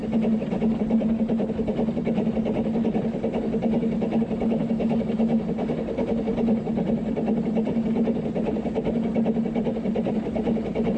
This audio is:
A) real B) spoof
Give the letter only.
A